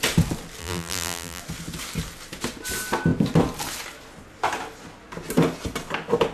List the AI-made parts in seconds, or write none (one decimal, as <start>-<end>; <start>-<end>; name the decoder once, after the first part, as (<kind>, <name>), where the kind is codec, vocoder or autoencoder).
0.6-1.4 (vocoder, BigVGAN v2)